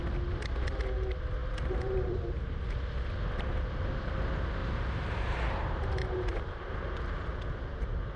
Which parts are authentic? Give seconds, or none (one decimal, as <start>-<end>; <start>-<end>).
0.0-1.4; 2.7-4.6; 7.0-8.2